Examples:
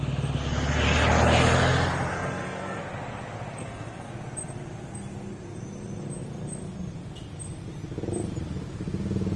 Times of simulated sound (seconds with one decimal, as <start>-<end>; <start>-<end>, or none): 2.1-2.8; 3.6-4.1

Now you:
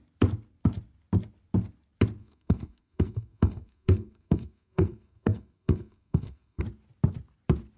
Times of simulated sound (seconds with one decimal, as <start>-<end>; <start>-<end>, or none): 2.2-6.6

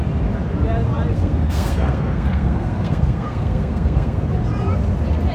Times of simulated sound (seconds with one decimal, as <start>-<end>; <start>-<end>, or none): 1.1-4.3

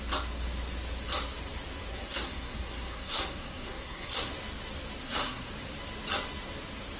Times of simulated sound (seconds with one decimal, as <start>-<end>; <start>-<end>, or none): 1.9-4.3; 5.0-5.5